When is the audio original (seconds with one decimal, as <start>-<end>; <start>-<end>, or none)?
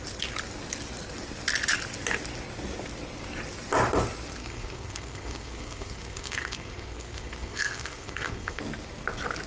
0.0-4.4; 8.6-9.5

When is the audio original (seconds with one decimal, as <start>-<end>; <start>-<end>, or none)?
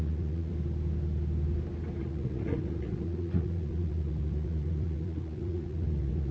0.5-2.0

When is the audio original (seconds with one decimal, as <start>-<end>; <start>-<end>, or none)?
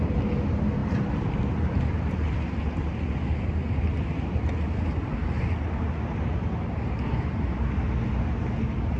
0.0-9.0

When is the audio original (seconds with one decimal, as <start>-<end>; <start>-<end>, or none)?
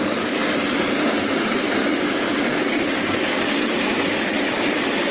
0.0-1.8; 3.4-5.1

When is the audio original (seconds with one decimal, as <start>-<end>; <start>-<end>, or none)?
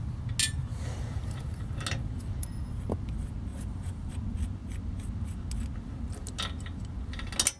0.0-0.7; 1.7-3.5; 4.1-7.6